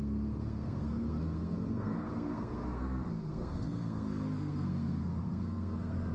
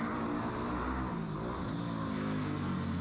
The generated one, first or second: first